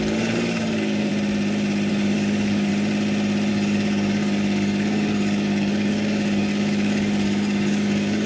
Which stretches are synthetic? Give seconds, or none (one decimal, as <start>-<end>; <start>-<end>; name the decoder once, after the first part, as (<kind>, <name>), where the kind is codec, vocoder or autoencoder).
0.0-1.1 (codec, DAC); 1.9-2.7; 3.5-8.3